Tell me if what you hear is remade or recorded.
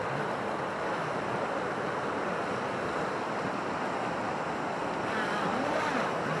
recorded